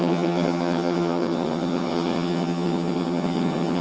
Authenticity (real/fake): fake